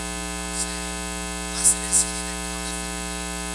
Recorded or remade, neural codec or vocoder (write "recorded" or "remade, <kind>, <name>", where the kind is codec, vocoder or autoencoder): recorded